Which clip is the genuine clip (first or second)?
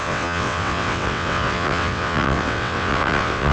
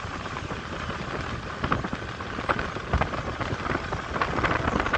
second